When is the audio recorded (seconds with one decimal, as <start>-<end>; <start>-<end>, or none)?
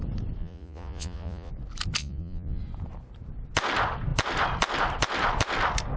0.0-0.4; 1.5-2.0; 2.6-6.0